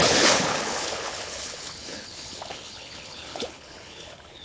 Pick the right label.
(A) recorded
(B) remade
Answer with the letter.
B